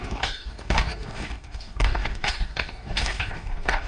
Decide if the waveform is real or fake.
fake